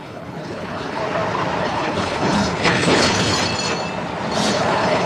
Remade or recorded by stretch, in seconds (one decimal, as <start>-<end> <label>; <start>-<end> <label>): 0.0-1.0 remade; 1.0-1.6 recorded; 1.6-3.3 remade; 3.3-4.5 recorded; 4.5-5.1 remade